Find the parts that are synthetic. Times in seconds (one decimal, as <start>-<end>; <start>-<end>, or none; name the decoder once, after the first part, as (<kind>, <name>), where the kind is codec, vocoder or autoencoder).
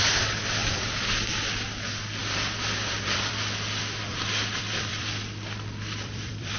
0.6-1.3 (vocoder, BigVGAN v2); 2.2-3.3; 4.1-6.6